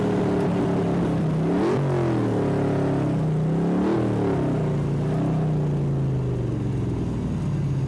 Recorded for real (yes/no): yes